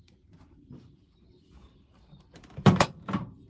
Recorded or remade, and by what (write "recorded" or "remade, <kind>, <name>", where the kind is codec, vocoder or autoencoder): remade, vocoder, BigVGAN v2